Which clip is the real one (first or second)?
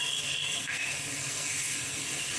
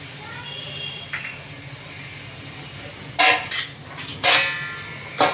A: second